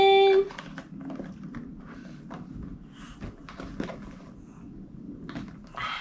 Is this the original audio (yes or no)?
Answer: yes